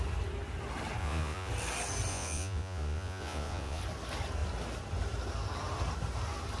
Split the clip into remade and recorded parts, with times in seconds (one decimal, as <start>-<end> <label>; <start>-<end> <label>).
0.0-1.0 recorded; 1.0-1.5 remade; 1.5-2.1 recorded; 2.1-3.8 remade; 3.8-6.6 recorded